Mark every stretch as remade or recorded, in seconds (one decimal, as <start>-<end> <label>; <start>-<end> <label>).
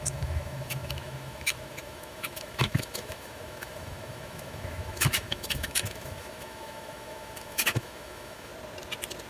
0.0-8.5 remade; 8.5-9.3 recorded